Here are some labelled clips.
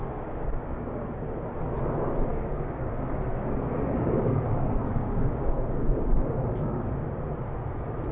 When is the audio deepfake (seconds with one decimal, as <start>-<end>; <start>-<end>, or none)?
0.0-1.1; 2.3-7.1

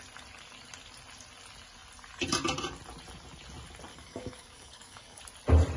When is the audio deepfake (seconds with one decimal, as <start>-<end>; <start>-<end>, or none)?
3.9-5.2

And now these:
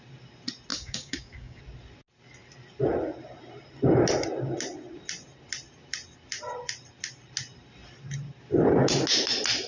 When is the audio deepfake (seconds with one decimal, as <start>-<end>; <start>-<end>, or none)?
0.7-1.6

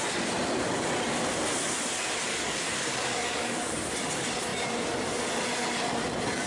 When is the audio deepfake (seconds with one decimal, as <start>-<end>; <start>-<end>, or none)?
2.3-3.8